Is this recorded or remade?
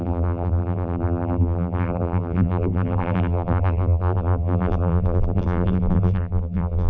remade